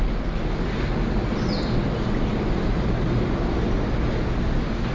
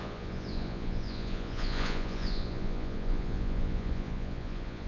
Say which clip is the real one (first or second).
first